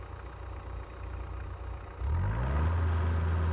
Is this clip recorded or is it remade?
recorded